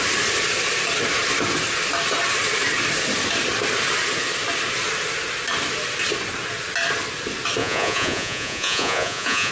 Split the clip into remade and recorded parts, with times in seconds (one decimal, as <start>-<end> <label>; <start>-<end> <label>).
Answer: 0.0-7.6 recorded; 7.6-9.5 remade